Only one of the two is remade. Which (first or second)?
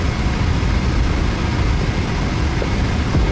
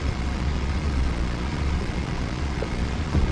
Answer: second